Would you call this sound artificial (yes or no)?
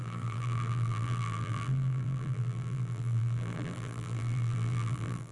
yes